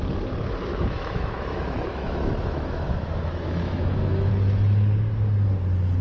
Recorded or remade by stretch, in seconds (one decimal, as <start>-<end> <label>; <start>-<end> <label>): 0.0-0.7 recorded; 0.7-4.3 remade; 4.3-6.0 recorded